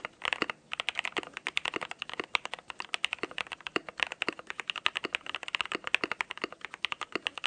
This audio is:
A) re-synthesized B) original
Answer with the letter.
B